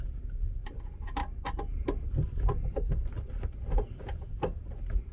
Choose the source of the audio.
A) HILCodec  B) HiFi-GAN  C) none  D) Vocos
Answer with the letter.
C